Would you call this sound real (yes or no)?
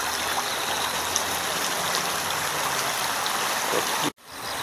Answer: yes